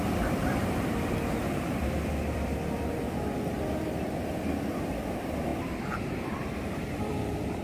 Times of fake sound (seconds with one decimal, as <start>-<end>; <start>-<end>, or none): 0.0-0.6; 1.4-7.6